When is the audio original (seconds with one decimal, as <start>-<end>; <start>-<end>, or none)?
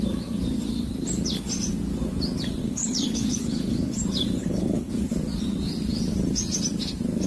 0.0-2.6; 4.0-4.4; 4.9-7.3